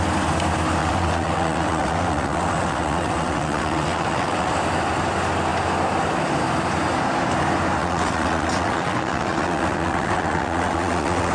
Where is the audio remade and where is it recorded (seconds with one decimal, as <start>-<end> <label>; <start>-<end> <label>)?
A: 0.0-0.8 recorded; 0.8-4.5 remade; 4.5-7.8 recorded; 7.8-11.3 remade